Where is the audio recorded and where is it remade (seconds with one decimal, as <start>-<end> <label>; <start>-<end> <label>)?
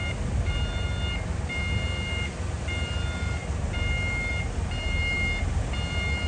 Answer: 0.0-6.3 recorded